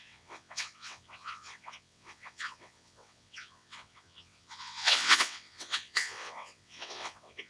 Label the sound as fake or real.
fake